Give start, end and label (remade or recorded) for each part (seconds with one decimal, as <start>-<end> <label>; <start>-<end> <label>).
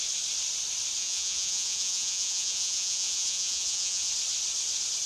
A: 0.0-1.0 recorded; 1.0-4.1 remade; 4.1-5.1 recorded